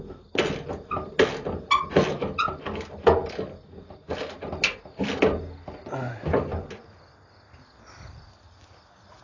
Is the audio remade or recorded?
recorded